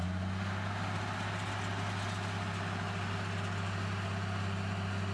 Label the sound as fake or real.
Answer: real